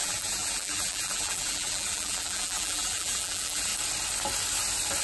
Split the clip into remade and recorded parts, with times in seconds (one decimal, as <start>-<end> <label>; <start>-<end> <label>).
0.0-3.7 remade; 3.7-5.0 recorded